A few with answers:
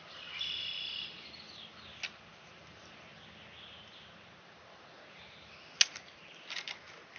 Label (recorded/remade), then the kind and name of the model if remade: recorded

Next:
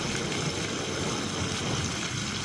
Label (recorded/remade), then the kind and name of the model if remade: recorded